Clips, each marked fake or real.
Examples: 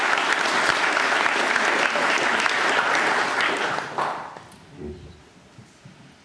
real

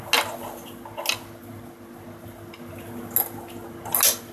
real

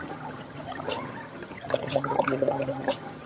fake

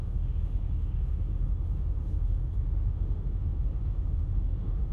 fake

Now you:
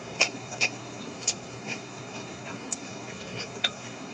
fake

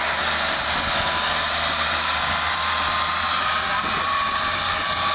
real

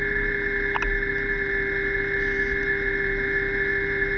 real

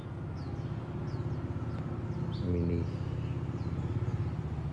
real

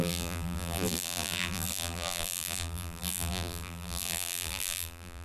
fake